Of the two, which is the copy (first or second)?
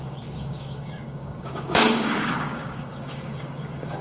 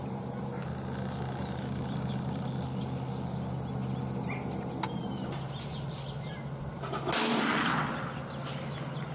first